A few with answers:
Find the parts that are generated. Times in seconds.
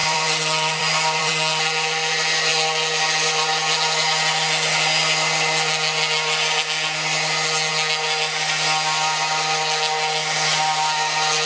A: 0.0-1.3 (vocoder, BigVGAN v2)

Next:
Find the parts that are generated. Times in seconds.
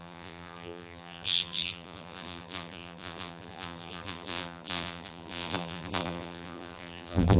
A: 0.0-7.4 (vocoder, BigVGAN v2)